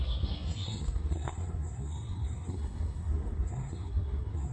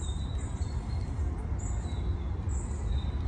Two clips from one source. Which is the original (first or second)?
second